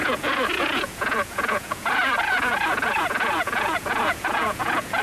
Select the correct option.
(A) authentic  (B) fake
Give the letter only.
B